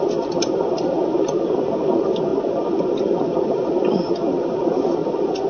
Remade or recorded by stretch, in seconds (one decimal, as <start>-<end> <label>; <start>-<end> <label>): 0.0-5.5 recorded